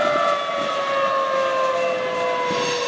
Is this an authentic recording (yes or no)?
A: yes